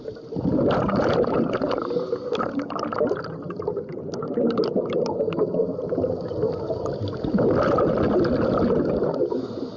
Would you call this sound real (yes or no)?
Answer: yes